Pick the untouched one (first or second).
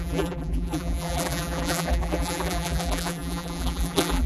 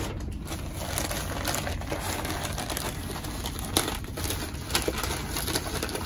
second